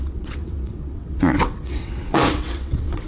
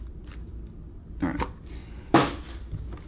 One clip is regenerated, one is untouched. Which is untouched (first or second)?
second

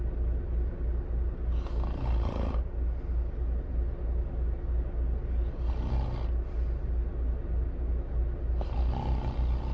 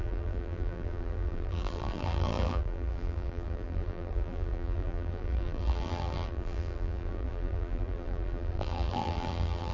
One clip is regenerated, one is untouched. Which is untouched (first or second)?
first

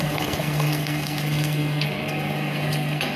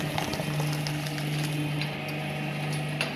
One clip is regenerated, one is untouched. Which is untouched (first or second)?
second